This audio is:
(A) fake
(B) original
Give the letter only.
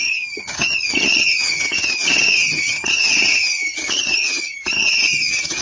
A